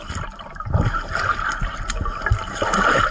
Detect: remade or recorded recorded